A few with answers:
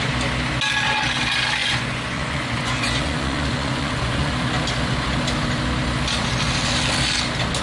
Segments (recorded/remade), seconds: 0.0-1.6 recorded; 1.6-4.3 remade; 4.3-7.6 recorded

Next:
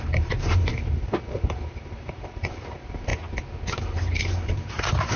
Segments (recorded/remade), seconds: 0.0-3.1 remade; 3.1-3.8 recorded; 3.8-5.2 remade

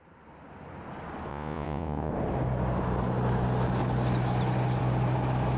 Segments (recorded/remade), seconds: 0.0-1.3 recorded; 1.3-2.1 remade; 2.1-5.6 recorded

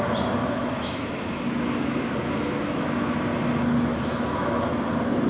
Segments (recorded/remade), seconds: 0.0-0.4 recorded; 0.4-3.2 remade; 3.2-3.9 recorded; 3.9-4.6 remade; 4.6-5.3 recorded

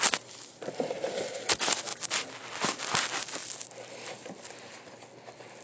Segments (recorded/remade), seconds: 0.0-5.6 recorded

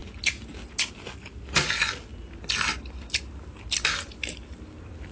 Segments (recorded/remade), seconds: 0.0-5.1 recorded

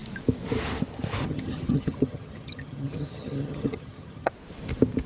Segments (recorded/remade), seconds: 0.0-1.2 recorded; 1.2-4.3 remade; 4.3-5.1 recorded

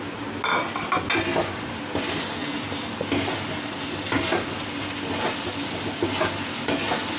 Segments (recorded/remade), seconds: 0.0-7.2 recorded